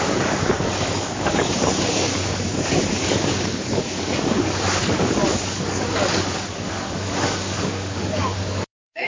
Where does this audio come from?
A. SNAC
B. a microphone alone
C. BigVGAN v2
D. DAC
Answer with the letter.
D